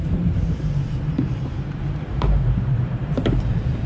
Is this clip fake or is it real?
fake